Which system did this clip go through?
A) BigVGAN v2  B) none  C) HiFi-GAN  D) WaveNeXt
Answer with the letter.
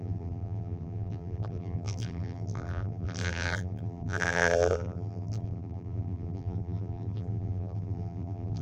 A